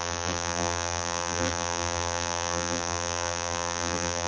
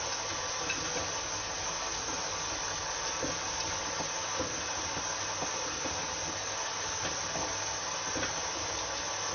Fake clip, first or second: first